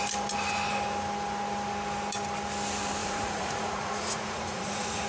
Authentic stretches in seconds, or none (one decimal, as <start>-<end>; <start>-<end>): 0.0-3.0